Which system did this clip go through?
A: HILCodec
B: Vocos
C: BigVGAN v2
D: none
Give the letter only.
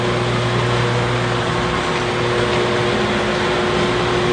D